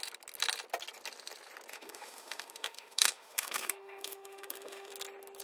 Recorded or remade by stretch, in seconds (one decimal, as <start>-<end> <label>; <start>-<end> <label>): 0.0-1.7 recorded; 1.7-4.9 remade; 4.9-5.4 recorded

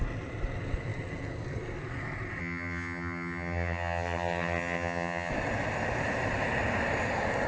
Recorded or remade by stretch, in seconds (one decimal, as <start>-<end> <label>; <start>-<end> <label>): 0.0-2.4 recorded; 2.4-5.3 remade; 5.3-7.5 recorded

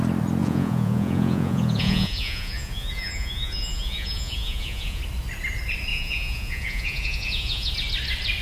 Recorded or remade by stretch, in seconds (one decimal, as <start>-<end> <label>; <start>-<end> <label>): 0.0-0.4 recorded; 0.4-5.0 remade; 5.0-5.9 recorded; 5.9-7.7 remade; 7.7-8.4 recorded

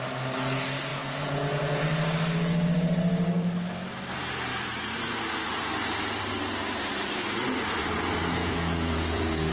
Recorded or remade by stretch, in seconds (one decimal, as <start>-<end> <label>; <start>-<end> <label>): 0.0-0.9 recorded; 0.9-1.8 remade; 1.8-8.4 recorded; 8.4-9.5 remade

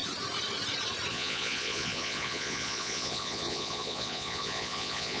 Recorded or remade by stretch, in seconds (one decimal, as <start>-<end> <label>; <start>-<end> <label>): 0.0-1.1 recorded; 1.1-5.2 remade

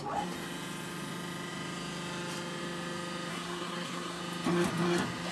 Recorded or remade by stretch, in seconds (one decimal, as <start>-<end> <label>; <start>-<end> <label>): 0.0-3.3 recorded; 3.3-4.2 remade; 4.2-5.3 recorded

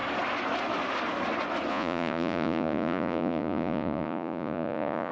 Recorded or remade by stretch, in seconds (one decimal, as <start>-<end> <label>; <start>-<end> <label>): 0.0-1.7 recorded; 1.7-5.1 remade